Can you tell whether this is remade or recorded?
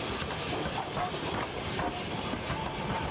recorded